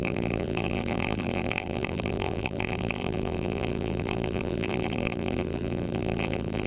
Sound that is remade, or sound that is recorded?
remade